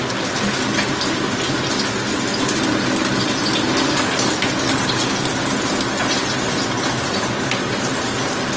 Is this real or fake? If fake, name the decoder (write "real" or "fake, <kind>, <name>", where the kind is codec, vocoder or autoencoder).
real